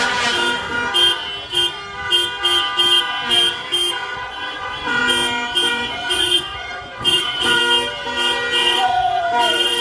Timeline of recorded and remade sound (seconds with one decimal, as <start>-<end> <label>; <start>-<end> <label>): 0.0-4.0 recorded; 4.0-5.0 remade; 5.0-5.7 recorded; 5.7-7.6 remade; 7.6-8.6 recorded; 8.6-9.8 remade

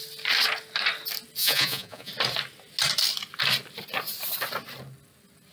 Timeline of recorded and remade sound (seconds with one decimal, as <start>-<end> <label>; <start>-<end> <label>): 0.0-1.4 recorded; 1.4-2.1 remade; 2.1-5.5 recorded

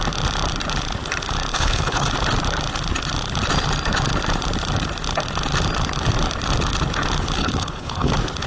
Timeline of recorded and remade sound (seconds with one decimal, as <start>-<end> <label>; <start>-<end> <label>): 0.0-1.5 recorded; 1.5-2.1 remade; 2.1-7.4 recorded; 7.4-8.1 remade; 8.1-8.5 recorded

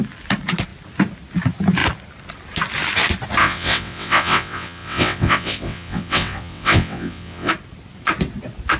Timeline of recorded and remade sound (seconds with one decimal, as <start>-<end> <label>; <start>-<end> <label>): 0.0-3.4 recorded; 3.4-7.5 remade; 7.5-8.8 recorded

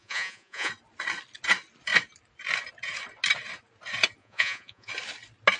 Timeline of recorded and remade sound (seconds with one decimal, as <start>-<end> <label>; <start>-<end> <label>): 0.0-0.7 remade; 0.7-4.2 recorded; 4.2-4.9 remade; 4.9-5.6 recorded

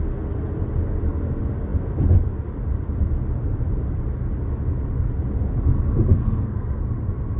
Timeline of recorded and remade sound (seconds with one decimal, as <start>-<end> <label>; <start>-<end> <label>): 0.0-6.2 recorded; 6.2-6.8 remade; 6.8-7.4 recorded

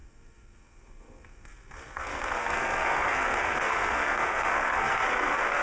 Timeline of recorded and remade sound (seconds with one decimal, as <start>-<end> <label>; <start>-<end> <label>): 0.0-5.6 remade